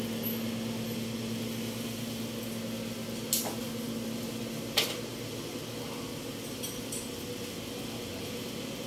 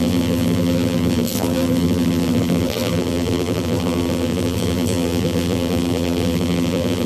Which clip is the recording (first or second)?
first